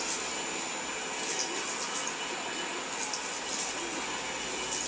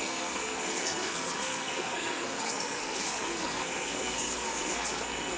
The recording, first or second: first